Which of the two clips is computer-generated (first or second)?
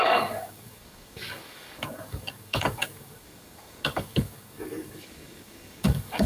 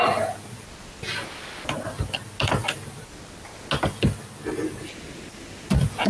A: first